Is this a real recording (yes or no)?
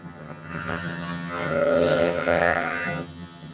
no